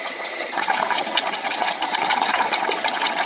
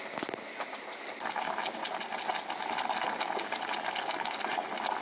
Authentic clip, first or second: second